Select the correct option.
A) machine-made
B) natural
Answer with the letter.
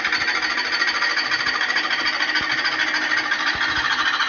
B